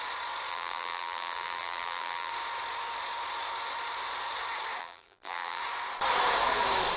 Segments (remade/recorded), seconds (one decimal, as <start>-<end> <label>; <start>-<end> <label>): 0.0-0.5 recorded; 0.5-2.3 remade; 2.3-4.8 recorded; 4.8-5.6 remade; 5.6-7.0 recorded